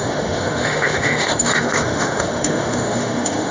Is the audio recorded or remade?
remade